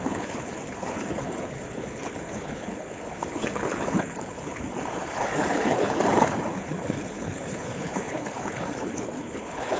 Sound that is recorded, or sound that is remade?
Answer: remade